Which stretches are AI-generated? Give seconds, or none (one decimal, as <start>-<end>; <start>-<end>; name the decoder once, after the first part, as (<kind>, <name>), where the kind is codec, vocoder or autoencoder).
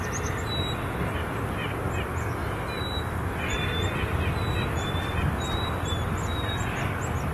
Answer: 2.4-6.2 (vocoder, BigVGAN v2)